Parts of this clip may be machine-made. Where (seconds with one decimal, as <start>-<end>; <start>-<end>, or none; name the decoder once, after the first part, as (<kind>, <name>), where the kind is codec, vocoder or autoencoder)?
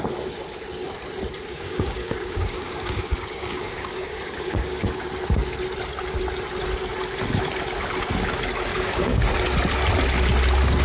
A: 1.5-5.1 (codec, DAC); 8.7-9.2